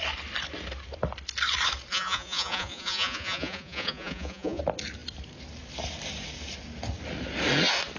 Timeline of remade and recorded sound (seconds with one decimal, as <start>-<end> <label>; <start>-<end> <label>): 0.0-1.9 recorded; 1.9-4.6 remade; 4.6-8.0 recorded